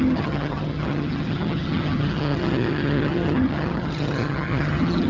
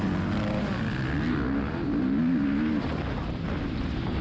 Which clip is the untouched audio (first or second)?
second